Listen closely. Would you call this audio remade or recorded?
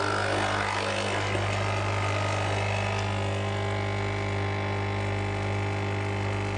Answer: recorded